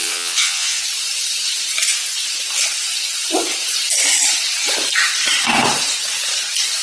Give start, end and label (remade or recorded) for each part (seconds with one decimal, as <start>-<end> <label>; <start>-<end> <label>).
0.0-0.8 remade; 0.8-6.8 recorded